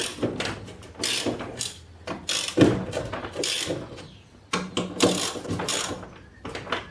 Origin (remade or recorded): recorded